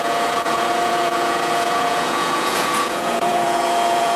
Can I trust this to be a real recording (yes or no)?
no